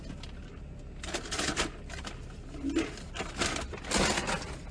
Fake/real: real